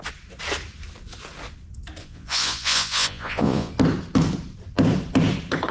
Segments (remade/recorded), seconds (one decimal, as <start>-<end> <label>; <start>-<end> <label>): 0.0-2.0 recorded; 2.0-3.7 remade; 3.7-5.7 recorded